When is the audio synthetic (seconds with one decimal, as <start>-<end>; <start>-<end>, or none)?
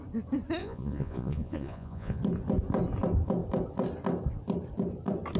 0.6-2.2